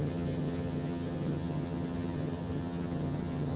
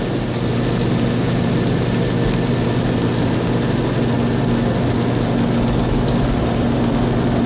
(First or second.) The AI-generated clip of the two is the first